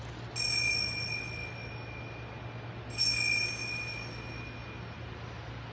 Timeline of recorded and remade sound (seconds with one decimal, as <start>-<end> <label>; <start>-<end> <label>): 0.0-5.7 recorded